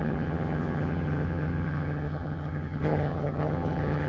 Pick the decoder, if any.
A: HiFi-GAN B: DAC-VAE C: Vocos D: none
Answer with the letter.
A